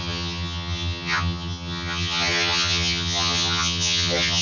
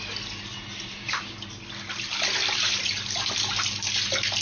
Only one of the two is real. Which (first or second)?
second